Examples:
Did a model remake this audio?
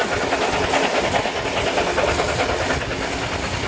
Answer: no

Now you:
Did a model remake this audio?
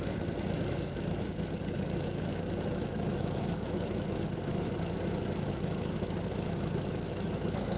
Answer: yes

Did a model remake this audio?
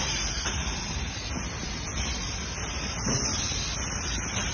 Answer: yes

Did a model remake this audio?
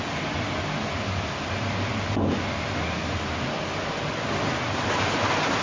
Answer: no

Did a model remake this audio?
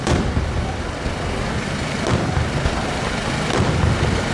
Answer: no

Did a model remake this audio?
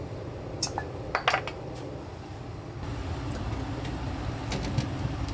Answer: no